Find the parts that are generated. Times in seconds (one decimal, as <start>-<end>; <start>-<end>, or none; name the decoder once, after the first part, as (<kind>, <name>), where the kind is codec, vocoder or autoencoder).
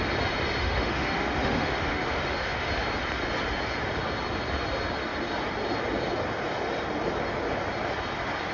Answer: 0.6-2.7 (autoencoder, DAC-VAE)